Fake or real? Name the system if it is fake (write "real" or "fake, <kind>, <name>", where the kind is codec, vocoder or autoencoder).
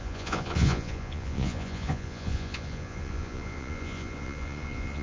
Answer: fake, vocoder, Vocos